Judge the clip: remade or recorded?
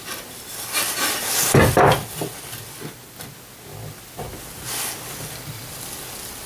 recorded